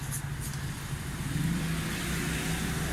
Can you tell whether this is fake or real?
real